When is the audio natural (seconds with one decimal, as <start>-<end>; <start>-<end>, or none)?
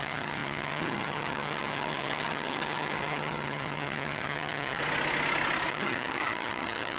4.8-5.7